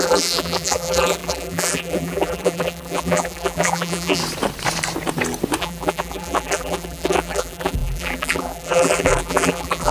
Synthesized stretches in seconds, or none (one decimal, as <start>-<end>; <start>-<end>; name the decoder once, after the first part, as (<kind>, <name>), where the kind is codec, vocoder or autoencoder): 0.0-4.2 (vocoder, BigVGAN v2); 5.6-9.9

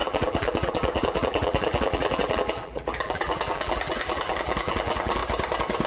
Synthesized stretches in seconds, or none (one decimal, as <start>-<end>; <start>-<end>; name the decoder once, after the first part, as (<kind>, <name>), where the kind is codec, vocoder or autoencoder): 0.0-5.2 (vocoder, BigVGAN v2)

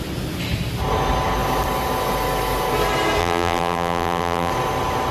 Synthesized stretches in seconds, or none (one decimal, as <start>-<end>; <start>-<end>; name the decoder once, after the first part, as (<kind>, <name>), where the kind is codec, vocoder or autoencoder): 3.2-4.5 (vocoder, BigVGAN v2)

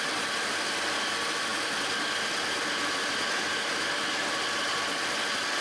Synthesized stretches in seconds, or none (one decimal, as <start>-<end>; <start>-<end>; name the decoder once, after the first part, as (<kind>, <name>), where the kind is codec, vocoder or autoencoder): none